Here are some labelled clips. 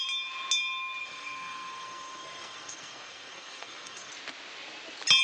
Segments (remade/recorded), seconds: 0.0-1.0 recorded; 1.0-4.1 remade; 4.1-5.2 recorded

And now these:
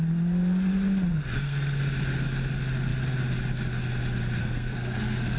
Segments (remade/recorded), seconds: 0.0-1.1 recorded; 1.1-1.8 remade; 1.8-4.4 recorded; 4.4-5.4 remade

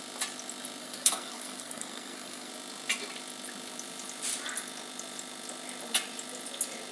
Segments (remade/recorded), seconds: 0.0-0.8 recorded; 0.8-2.5 remade; 2.5-6.9 recorded

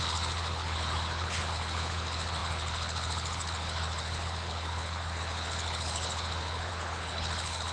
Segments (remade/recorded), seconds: 0.0-7.7 remade

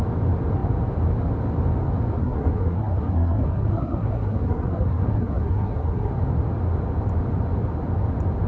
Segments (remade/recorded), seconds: 0.0-2.2 recorded; 2.2-6.1 remade; 6.1-8.5 recorded